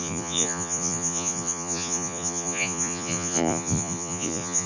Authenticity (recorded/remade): remade